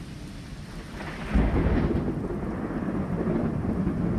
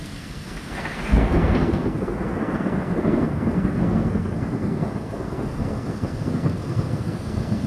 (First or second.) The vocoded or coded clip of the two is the second